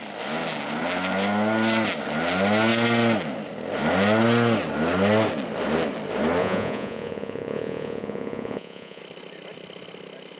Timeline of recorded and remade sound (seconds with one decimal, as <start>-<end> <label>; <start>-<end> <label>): 0.0-6.4 recorded; 6.4-9.0 remade; 9.0-10.4 recorded